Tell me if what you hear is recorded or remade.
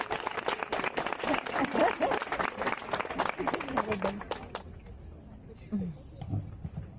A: recorded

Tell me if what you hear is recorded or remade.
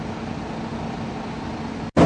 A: recorded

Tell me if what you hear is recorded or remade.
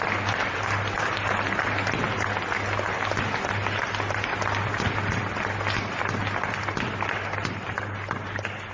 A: recorded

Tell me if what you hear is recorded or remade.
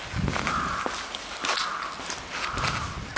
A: recorded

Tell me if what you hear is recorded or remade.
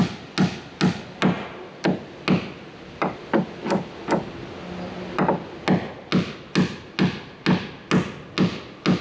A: recorded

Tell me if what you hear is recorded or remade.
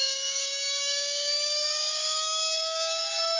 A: remade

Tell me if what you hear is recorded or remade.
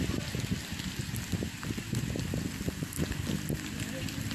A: recorded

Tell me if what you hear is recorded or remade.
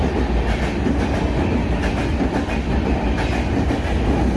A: recorded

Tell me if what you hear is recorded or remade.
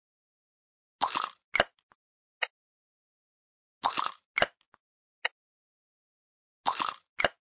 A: recorded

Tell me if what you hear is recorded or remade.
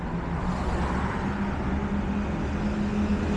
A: recorded